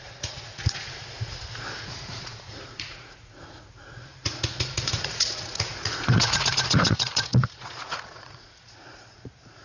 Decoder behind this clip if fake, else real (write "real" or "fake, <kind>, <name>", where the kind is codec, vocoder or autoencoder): fake, vocoder, Vocos